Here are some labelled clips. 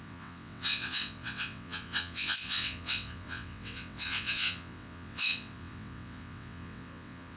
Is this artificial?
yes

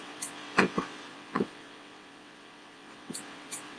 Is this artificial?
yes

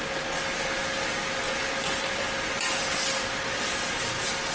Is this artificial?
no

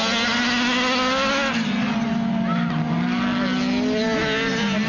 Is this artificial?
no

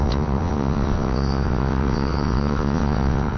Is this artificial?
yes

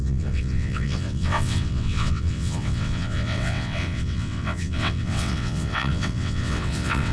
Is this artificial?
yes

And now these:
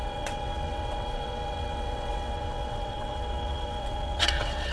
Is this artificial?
yes